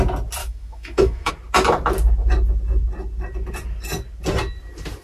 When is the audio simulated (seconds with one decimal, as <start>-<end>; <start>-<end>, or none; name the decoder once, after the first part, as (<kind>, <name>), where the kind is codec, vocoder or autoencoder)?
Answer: 0.4-1.3 (autoencoder, DAC-VAE)